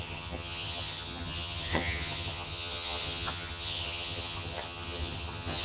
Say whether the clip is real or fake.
fake